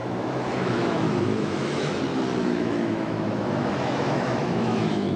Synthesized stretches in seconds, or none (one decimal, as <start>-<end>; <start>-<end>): 0.0-2.0; 2.4-5.2